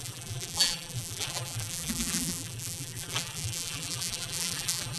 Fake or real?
fake